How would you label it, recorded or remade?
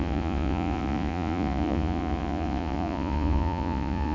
remade